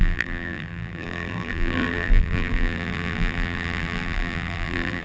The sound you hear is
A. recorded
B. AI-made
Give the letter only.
B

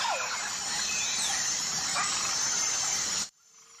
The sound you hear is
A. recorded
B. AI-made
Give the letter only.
B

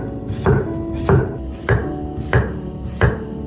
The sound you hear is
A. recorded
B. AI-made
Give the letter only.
B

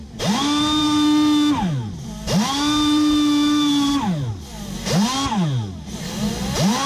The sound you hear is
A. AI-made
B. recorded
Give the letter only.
B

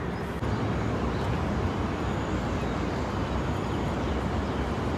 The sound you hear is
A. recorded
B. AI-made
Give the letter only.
A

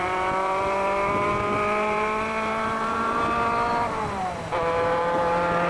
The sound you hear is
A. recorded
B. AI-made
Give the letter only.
B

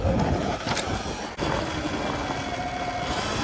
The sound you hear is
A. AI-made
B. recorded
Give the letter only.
B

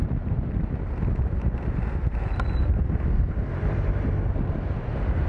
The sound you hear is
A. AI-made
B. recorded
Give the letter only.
A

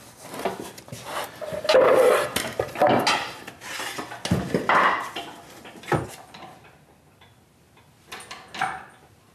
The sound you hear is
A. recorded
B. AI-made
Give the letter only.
A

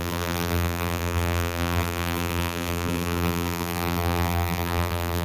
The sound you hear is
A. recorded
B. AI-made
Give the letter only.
B